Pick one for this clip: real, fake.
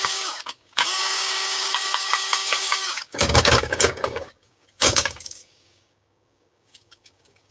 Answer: fake